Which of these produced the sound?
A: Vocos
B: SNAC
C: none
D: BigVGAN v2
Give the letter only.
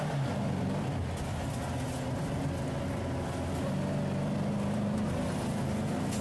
C